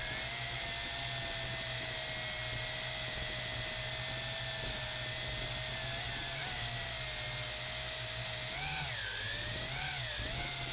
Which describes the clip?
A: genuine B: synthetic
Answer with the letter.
A